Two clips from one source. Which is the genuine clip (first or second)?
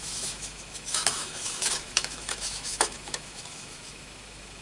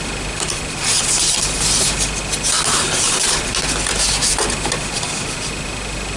second